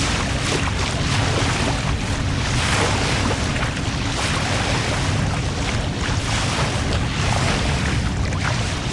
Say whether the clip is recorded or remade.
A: recorded